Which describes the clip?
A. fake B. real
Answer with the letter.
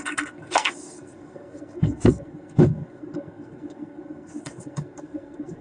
A